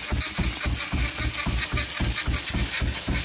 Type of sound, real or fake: real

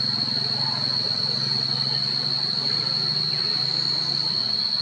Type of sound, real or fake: real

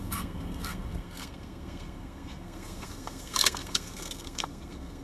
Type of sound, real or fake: fake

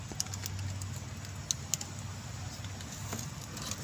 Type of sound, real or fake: real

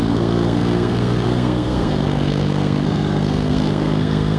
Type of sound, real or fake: fake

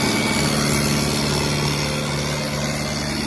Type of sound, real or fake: real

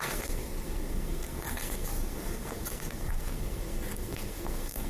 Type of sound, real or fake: fake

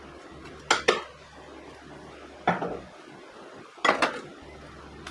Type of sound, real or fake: real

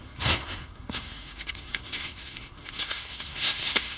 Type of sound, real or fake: fake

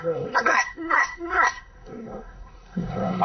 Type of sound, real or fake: fake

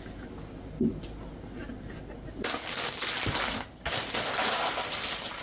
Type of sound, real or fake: real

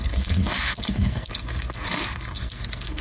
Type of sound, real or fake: fake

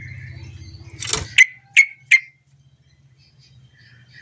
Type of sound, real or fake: real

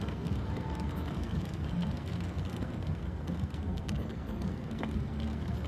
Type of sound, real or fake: fake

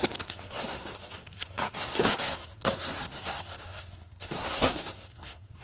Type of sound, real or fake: fake